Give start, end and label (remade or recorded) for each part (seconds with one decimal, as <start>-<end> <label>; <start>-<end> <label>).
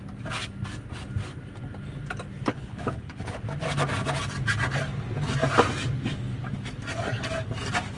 0.0-2.5 recorded; 2.5-3.4 remade; 3.4-8.0 recorded